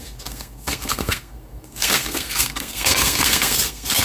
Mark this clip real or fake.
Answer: fake